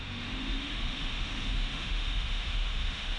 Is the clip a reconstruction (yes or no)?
yes